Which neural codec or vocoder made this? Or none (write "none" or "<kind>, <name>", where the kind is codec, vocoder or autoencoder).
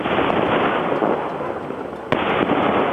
none